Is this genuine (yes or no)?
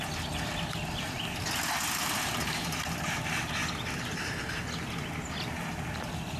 yes